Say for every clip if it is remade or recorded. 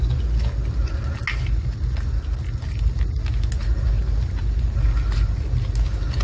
recorded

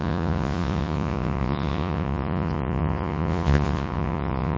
remade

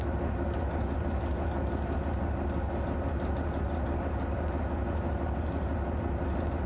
recorded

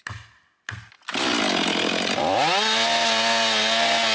recorded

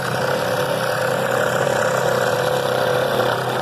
recorded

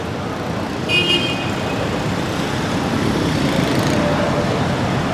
remade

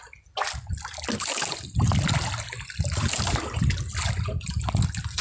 recorded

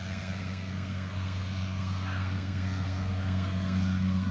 remade